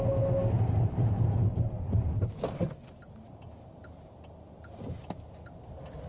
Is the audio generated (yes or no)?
no